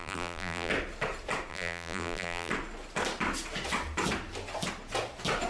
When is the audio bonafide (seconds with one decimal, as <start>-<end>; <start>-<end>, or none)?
0.7-1.5; 2.5-5.5

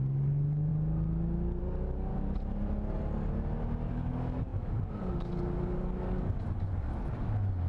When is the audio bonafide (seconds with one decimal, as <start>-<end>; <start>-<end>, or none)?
0.7-1.6; 2.1-3.9

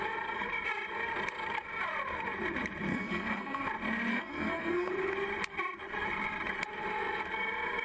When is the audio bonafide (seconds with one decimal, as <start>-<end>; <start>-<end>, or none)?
0.0-2.9; 3.6-4.1; 4.9-7.8

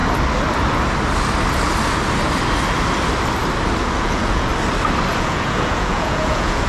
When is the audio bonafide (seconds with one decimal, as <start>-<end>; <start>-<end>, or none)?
0.0-4.0; 4.5-5.2

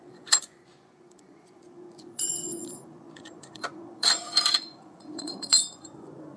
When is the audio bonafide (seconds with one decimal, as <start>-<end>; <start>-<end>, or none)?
none

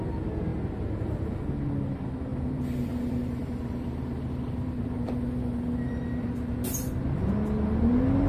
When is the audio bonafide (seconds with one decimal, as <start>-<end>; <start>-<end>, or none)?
0.0-2.3; 7.3-8.3

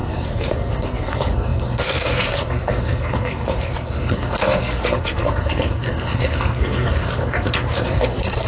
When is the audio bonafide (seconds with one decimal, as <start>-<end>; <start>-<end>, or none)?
none